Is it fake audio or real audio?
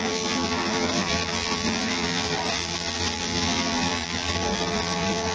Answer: fake